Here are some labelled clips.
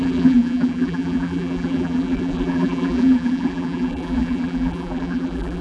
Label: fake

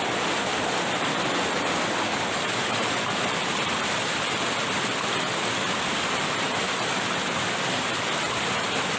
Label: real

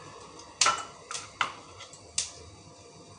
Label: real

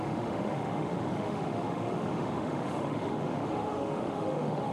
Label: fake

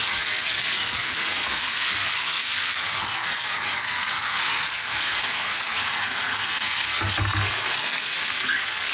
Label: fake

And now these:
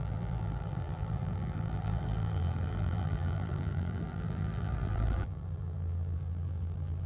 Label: fake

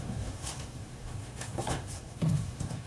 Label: fake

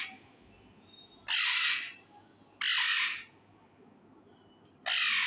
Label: real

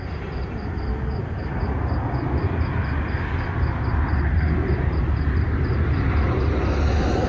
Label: real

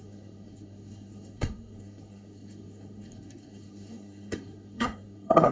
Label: fake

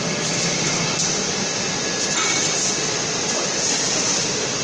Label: real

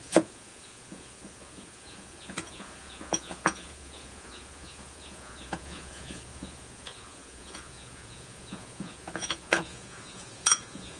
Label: fake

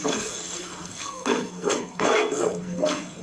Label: fake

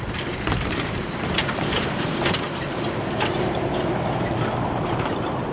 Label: fake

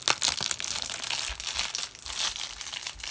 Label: real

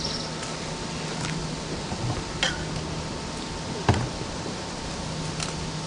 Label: real